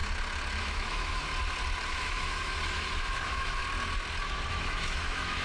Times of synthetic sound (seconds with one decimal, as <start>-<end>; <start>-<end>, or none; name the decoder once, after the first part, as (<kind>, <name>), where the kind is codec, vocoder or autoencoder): 0.6-1.3 (autoencoder, DAC-VAE); 1.9-3.6; 4.5-5.4